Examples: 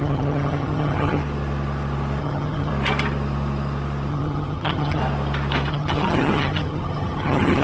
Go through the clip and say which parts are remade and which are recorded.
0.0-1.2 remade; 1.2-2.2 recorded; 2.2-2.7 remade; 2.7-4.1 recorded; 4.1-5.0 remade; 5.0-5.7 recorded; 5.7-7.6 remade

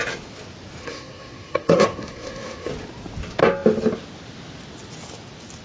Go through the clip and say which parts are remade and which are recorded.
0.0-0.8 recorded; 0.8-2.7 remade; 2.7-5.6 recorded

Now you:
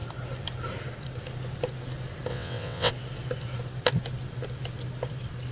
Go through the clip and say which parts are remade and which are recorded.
0.0-2.3 recorded; 2.3-2.9 remade; 2.9-5.5 recorded